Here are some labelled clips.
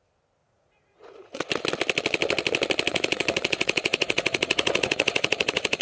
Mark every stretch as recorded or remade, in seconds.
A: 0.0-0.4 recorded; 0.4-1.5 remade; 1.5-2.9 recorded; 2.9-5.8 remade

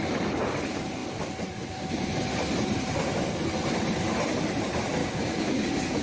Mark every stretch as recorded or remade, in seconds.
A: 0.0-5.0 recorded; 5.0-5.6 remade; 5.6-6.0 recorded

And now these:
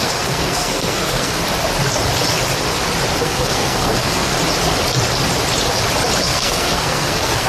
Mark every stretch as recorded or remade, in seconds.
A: 0.0-1.4 remade; 1.4-3.2 recorded; 3.2-4.3 remade; 4.3-6.2 recorded; 6.2-7.5 remade